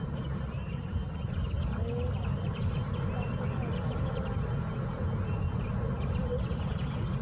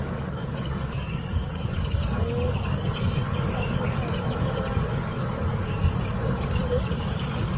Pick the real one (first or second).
first